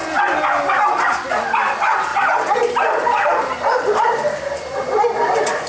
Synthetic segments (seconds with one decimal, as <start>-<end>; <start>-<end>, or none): 2.1-5.7